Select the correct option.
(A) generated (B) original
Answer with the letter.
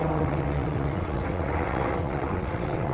A